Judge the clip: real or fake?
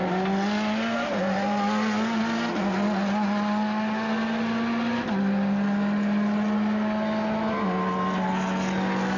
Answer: real